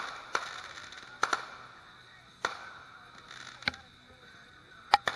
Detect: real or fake real